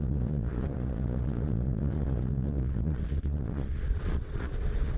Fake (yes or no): yes